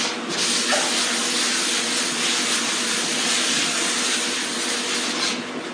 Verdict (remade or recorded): recorded